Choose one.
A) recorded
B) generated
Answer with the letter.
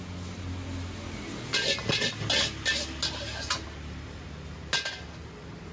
A